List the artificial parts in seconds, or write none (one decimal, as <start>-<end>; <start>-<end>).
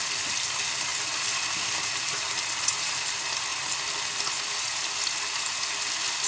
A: none